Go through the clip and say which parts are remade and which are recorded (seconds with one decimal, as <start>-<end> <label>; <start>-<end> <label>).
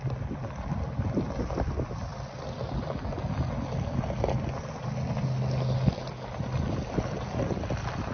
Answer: 0.0-8.1 recorded